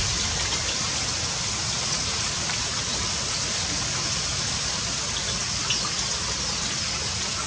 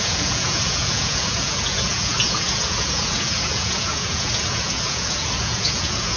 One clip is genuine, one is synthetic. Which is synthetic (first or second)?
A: second